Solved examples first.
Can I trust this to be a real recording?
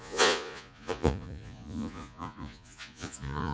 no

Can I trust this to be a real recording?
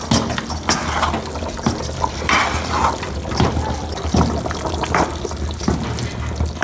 yes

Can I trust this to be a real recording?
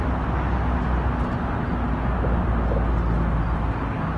yes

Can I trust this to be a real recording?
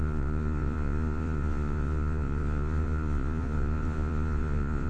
no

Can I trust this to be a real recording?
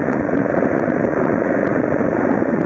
no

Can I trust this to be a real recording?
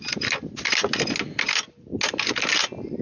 yes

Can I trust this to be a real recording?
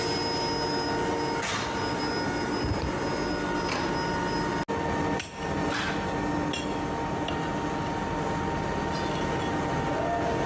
yes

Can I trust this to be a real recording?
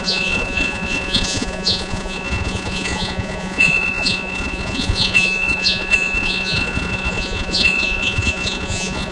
no